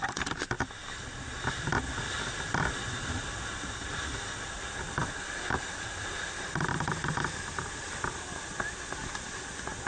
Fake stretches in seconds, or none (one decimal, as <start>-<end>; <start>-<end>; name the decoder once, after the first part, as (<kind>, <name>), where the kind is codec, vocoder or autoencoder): none